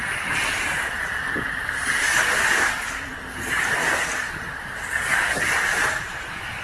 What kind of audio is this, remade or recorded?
recorded